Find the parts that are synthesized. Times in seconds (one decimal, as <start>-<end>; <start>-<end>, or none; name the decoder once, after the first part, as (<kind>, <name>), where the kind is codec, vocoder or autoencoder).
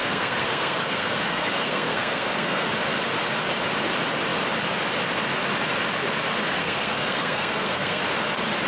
0.0-2.7 (codec, SNAC); 6.6-8.0